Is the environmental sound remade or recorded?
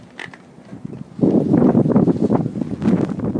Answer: recorded